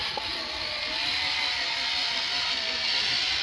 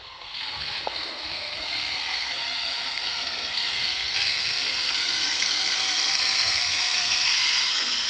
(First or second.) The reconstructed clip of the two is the second